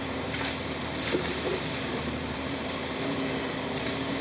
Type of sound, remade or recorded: remade